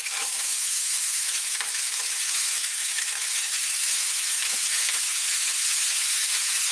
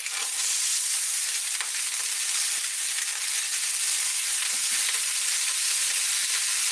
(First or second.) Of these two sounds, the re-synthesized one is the first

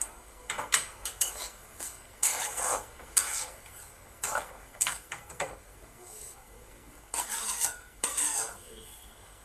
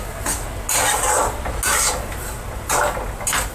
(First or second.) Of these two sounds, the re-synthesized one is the first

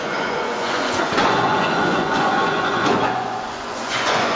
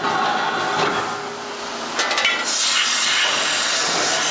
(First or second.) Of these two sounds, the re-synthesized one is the first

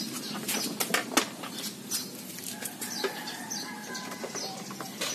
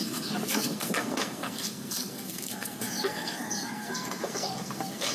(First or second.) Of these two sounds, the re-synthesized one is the second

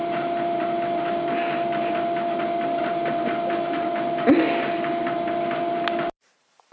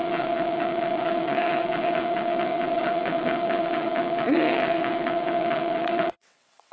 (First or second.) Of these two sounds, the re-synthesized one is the second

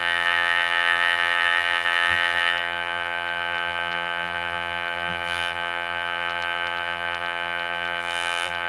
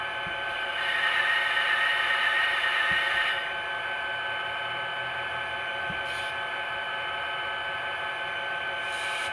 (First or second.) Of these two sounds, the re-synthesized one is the first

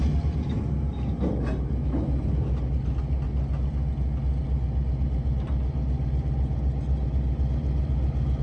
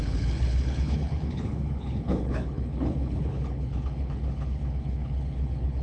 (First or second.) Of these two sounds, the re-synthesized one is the second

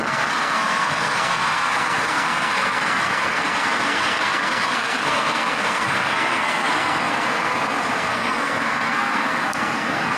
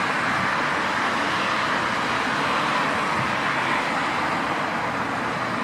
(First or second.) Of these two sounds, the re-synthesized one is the first